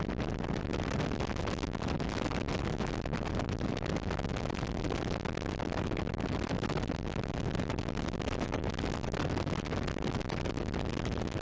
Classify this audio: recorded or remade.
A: recorded